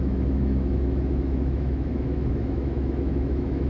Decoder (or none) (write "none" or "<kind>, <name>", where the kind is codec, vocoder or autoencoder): autoencoder, DAC-VAE